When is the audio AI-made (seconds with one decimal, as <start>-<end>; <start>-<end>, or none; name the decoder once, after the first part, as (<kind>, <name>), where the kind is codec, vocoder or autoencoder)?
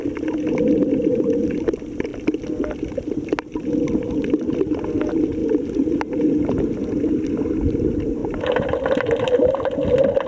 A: 2.1-3.2 (vocoder, BigVGAN v2); 8.2-9.6